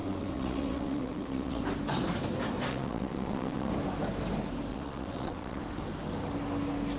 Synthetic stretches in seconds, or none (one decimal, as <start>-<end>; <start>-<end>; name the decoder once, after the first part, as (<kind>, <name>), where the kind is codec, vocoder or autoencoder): 0.0-1.6 (vocoder, WaveNeXt); 2.7-3.7; 4.7-5.6